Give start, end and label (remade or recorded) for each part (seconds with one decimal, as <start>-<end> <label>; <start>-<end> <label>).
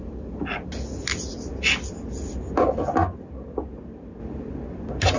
0.0-5.2 recorded